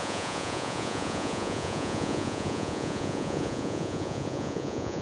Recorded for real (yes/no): no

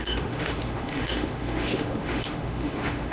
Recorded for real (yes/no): no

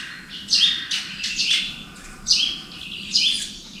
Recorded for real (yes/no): yes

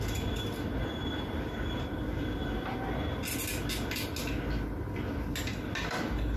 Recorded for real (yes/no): yes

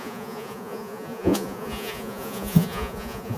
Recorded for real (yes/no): no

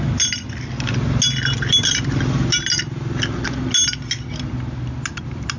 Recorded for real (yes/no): yes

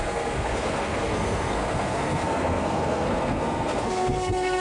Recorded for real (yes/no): no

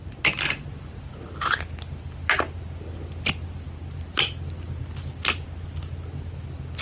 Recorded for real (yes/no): yes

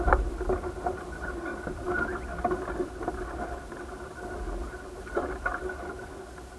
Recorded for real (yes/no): yes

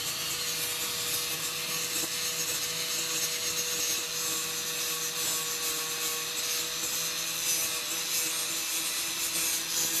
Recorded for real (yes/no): yes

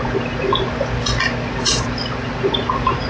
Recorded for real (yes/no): yes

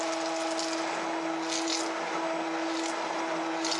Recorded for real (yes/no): yes